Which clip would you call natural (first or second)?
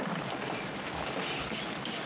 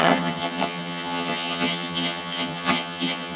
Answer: first